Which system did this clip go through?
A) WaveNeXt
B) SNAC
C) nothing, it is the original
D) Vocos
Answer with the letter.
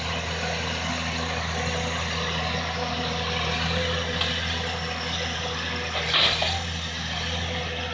C